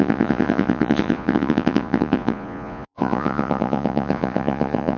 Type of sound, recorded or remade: remade